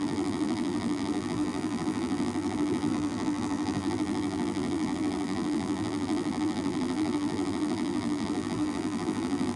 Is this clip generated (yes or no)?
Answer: yes